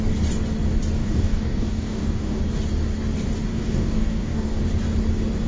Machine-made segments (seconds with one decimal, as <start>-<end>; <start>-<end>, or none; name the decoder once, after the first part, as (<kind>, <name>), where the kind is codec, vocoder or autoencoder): 1.0-2.4 (codec, DAC); 3.5-4.6